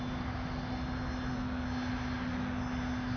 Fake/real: real